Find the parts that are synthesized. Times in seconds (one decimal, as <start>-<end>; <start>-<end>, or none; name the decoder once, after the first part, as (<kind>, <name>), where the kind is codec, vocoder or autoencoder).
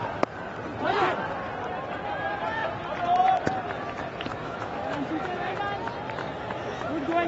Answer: 4.3-5.6 (autoencoder, DAC-VAE); 6.2-7.3